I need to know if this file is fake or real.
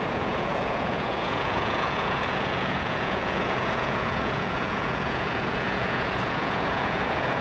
fake